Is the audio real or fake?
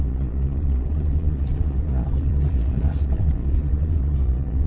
fake